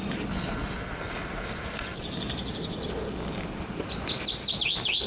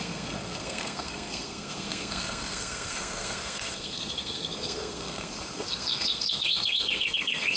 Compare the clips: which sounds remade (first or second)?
second